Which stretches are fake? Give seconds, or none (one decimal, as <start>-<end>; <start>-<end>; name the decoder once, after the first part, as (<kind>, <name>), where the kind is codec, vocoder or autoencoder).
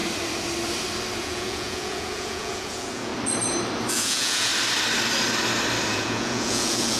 1.2-3.1 (vocoder, Vocos); 3.9-4.5; 5.9-7.0